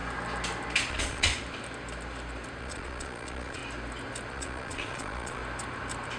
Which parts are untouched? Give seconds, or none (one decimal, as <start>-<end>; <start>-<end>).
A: 0.0-0.9; 1.3-2.6; 3.6-4.3; 5.4-6.2

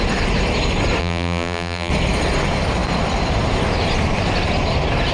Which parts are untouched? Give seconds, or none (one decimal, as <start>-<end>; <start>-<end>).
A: 0.0-1.0; 1.9-5.1

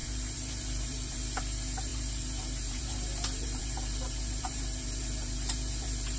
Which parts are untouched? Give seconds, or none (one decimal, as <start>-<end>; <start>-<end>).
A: none

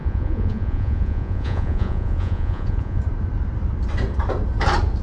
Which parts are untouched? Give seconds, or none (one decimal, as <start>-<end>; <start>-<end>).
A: 3.0-5.0

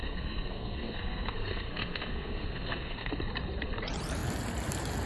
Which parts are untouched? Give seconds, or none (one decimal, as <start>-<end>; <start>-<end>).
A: 3.1-5.1